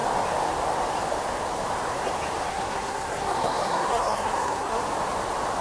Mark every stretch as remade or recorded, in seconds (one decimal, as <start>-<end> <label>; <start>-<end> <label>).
0.0-2.5 recorded; 2.5-4.8 remade; 4.8-5.6 recorded